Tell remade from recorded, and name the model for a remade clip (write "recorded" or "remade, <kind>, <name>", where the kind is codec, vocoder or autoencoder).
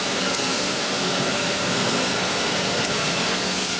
remade, codec, SNAC